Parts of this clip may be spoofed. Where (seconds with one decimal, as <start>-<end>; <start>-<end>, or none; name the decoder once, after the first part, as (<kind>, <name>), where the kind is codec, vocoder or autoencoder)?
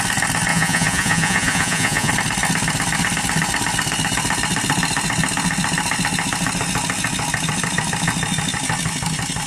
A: 0.5-2.1 (vocoder, Vocos)